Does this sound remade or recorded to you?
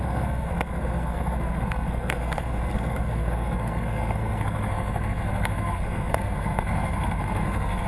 remade